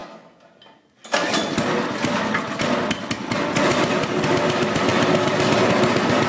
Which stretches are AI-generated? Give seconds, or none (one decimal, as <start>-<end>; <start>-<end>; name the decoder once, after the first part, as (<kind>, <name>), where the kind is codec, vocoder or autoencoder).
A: none